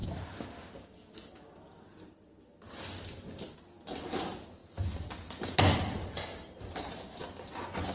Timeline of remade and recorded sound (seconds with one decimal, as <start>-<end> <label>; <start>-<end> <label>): 0.0-7.9 recorded